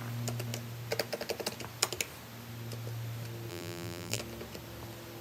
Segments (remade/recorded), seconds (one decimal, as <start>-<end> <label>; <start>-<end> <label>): 0.0-3.5 recorded; 3.5-4.2 remade; 4.2-5.2 recorded

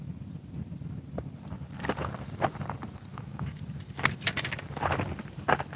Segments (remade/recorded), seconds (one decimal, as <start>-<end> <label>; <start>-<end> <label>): 0.0-3.1 recorded; 3.1-3.6 remade; 3.6-5.8 recorded

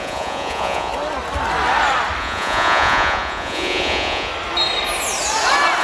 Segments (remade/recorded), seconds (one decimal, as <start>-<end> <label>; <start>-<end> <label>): 0.0-0.9 remade; 0.9-2.2 recorded; 2.2-4.3 remade; 4.3-5.8 recorded

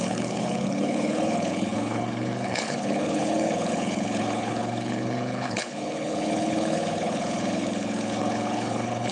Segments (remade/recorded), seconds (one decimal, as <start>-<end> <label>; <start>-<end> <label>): 0.0-9.1 remade

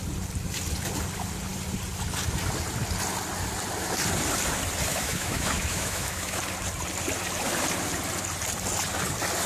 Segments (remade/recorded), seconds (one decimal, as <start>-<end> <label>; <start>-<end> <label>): 0.0-4.9 recorded; 4.9-6.4 remade; 6.4-9.5 recorded